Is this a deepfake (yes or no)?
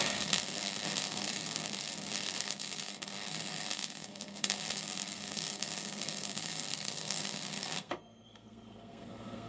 yes